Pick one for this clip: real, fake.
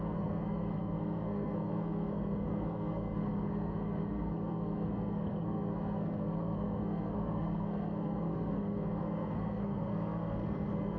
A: fake